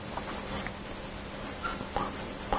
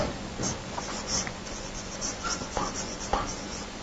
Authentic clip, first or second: first